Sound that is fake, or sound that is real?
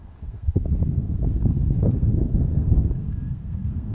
fake